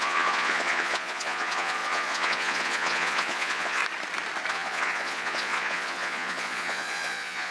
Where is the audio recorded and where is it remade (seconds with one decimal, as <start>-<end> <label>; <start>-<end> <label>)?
0.0-3.8 remade; 3.8-4.5 recorded; 4.5-7.5 remade